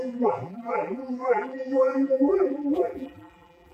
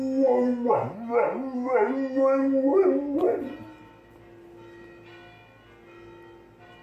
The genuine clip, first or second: second